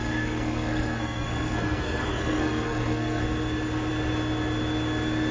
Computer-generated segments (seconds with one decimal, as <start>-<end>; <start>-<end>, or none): 0.0-3.2